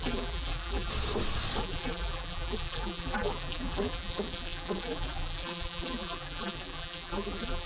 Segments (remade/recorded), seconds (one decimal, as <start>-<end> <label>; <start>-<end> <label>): 0.0-0.9 remade; 0.9-1.6 recorded; 1.6-7.7 remade